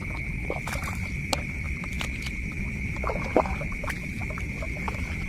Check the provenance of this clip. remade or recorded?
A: remade